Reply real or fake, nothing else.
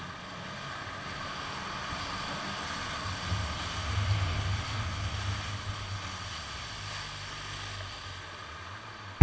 real